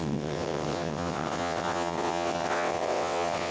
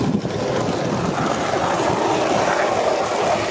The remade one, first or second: first